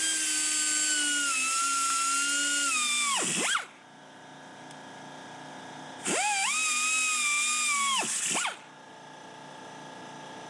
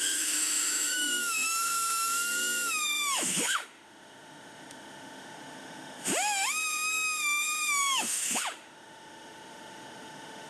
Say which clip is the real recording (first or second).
first